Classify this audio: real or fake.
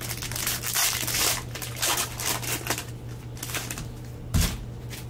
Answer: real